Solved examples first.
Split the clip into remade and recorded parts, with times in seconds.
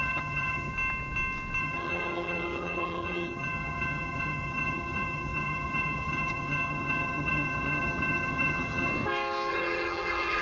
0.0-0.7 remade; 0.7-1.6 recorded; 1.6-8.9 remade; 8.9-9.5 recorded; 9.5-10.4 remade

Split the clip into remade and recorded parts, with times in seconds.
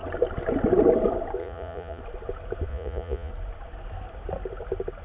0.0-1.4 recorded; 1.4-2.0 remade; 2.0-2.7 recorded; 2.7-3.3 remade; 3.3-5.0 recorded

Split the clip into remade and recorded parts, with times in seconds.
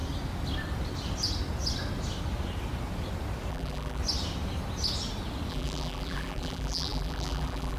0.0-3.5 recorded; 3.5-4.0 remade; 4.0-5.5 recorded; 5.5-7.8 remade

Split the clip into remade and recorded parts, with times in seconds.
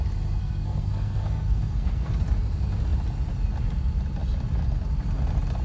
0.0-0.4 recorded; 0.4-2.1 remade; 2.1-5.6 recorded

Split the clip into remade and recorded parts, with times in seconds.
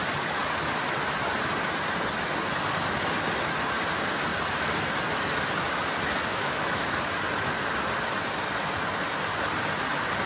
0.0-6.3 recorded; 6.3-7.0 remade; 7.0-10.3 recorded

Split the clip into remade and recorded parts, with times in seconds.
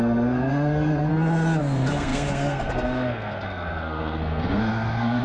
0.0-1.1 remade; 1.1-1.6 recorded; 1.6-5.2 remade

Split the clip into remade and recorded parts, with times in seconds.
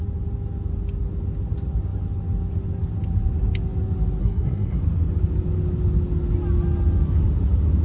0.0-4.2 recorded; 4.2-4.8 remade; 4.8-7.8 recorded